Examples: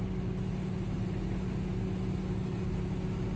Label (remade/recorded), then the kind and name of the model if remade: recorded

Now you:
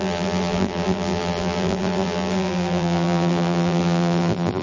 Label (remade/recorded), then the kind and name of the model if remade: remade, vocoder, BigVGAN v2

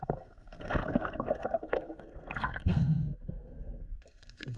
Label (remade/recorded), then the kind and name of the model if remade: remade, codec, SNAC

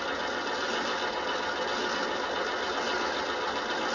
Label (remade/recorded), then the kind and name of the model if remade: recorded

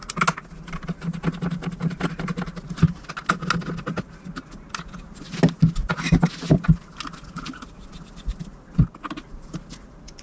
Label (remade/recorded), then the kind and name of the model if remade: recorded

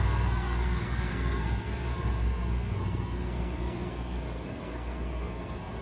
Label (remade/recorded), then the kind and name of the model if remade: remade, codec, SNAC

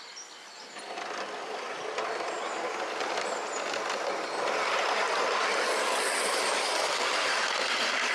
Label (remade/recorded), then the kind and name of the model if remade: recorded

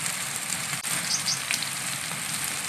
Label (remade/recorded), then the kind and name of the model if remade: recorded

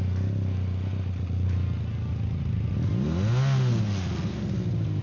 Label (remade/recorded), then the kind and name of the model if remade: recorded